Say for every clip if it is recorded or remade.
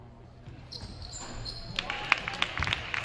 recorded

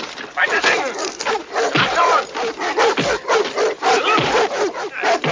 remade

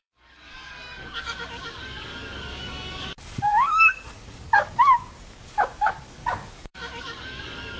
remade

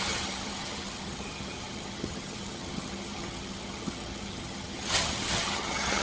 remade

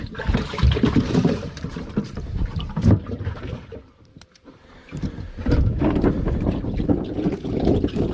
remade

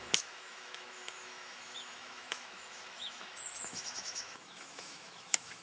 remade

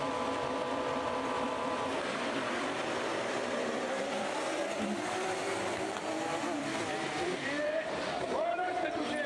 remade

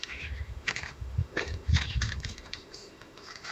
remade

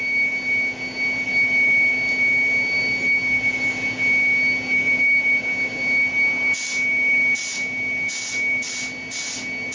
recorded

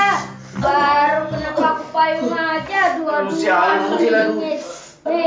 recorded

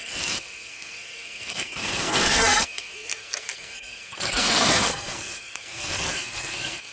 remade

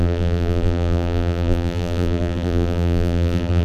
remade